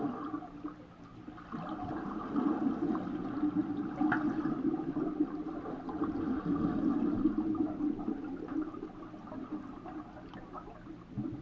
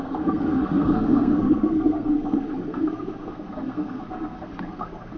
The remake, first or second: second